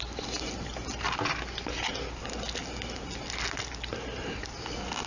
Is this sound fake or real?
real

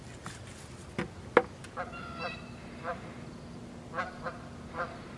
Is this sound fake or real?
real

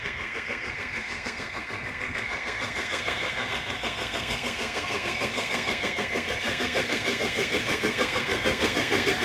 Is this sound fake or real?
fake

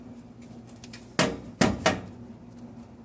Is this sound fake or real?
real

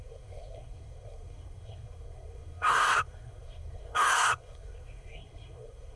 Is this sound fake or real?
fake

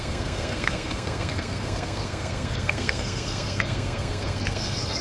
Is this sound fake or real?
fake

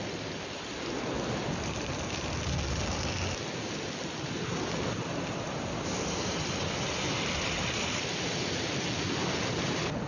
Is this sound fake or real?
real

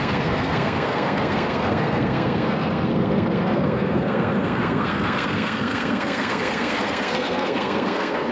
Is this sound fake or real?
fake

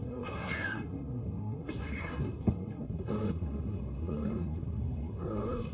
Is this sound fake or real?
fake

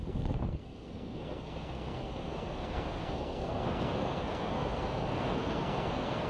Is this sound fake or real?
fake